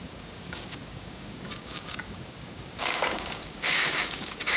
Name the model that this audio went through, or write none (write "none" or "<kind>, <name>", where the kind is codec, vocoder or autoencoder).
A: codec, DAC